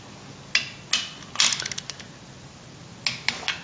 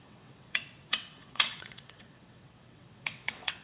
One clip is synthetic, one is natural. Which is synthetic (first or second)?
second